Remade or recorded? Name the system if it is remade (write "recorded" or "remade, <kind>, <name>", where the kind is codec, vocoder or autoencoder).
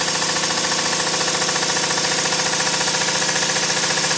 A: recorded